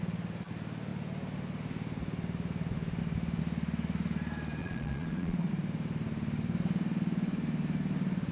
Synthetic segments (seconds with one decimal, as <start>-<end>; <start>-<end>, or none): 4.6-5.5